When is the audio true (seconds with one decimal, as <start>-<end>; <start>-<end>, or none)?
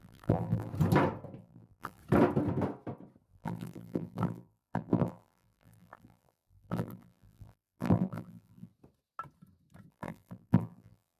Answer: 0.7-1.4; 2.0-3.3; 8.7-9.9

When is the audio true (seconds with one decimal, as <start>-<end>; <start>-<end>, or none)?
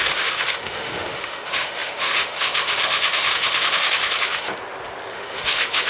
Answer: 4.5-5.1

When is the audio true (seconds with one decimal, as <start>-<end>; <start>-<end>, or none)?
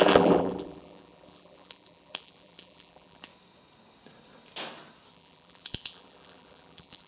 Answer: 3.3-5.1